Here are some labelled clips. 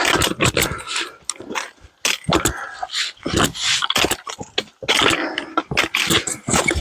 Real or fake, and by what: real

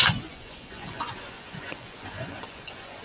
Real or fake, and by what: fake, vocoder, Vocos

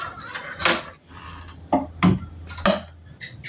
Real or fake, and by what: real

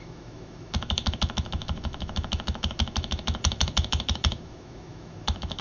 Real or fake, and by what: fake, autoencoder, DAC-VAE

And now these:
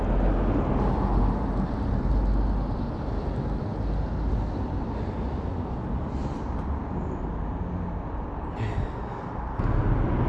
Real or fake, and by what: real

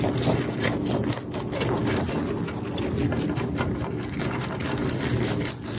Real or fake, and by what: real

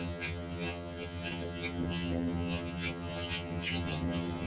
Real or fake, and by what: fake, vocoder, HiFi-GAN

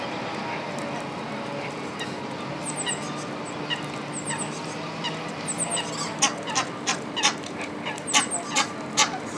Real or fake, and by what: real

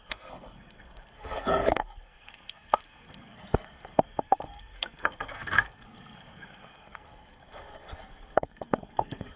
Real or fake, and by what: fake, codec, SNAC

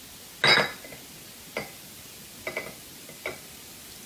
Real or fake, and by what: real